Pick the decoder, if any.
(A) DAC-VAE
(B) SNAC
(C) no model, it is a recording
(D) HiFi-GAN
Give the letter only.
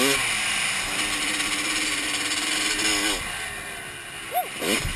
C